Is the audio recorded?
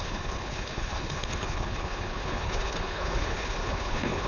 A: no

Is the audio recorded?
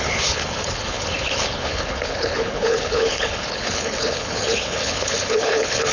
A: no